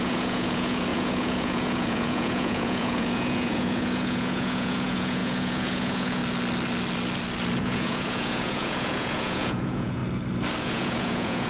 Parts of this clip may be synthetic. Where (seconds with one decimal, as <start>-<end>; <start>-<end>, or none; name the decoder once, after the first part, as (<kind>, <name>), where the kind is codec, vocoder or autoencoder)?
0.0-6.2 (vocoder, Vocos); 7.6-10.0; 10.6-11.5